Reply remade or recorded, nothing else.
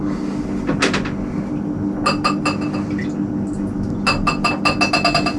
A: recorded